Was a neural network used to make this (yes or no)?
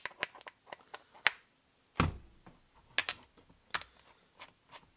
no